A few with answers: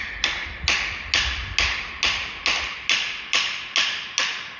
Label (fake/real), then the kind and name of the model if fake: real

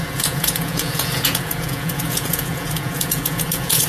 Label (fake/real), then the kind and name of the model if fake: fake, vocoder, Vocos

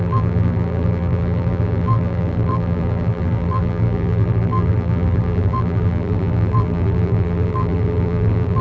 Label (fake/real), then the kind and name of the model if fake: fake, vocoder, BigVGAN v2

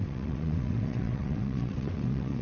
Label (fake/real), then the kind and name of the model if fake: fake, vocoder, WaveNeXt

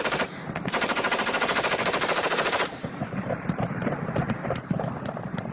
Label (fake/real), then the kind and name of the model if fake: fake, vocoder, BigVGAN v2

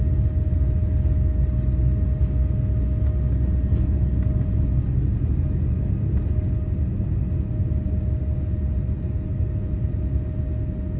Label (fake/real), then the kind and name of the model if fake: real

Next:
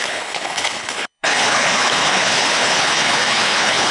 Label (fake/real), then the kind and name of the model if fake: fake, codec, HILCodec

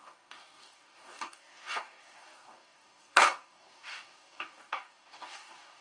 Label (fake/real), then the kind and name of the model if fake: fake, codec, DAC